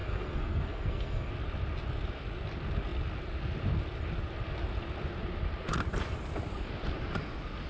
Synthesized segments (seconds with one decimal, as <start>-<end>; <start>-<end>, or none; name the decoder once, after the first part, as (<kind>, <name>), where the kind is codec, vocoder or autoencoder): 0.0-1.3 (codec, SNAC)

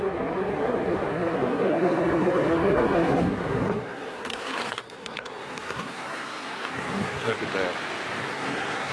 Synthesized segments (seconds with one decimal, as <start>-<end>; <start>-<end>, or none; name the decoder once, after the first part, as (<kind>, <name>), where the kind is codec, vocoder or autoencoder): 0.0-7.4 (codec, SNAC); 8.2-8.9

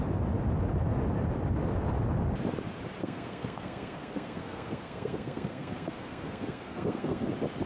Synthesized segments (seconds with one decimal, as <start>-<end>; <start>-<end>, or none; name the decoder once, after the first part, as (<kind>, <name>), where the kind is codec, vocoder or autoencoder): 3.0-7.3 (codec, SNAC)

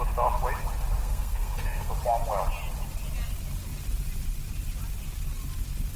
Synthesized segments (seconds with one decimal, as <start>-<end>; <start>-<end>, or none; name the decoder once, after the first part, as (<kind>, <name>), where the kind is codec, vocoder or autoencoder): 1.0-1.9 (codec, SNAC)